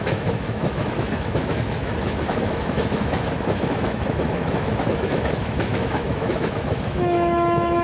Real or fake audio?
fake